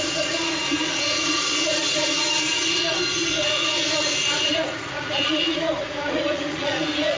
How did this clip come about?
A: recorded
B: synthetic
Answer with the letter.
B